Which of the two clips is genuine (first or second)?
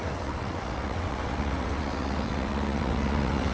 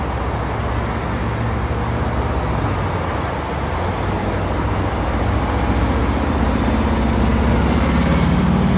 second